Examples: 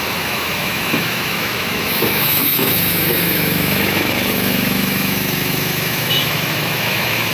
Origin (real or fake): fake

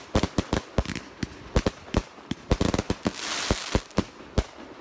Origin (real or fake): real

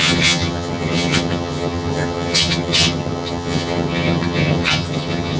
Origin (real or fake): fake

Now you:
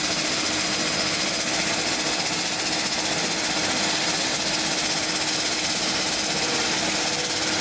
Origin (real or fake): real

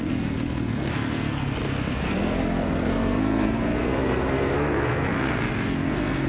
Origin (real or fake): fake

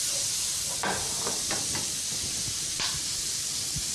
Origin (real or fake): real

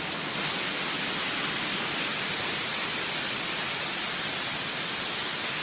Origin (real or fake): real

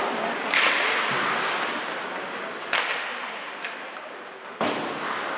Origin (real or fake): real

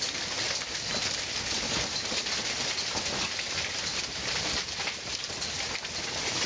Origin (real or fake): real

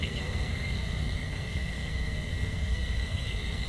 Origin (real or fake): fake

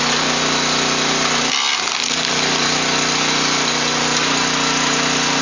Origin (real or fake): fake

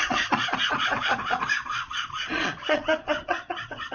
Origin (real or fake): fake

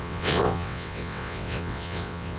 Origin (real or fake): fake